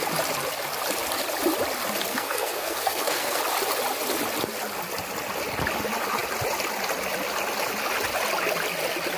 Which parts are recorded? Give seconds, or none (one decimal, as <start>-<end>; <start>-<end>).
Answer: 0.0-2.1; 3.4-9.2